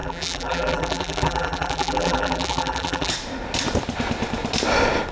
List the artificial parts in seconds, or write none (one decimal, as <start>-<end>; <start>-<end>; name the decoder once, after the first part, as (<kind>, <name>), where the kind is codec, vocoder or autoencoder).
0.0-3.1 (vocoder, BigVGAN v2)